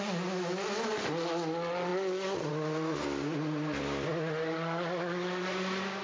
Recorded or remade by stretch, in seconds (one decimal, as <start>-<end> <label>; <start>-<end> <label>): 0.0-6.0 recorded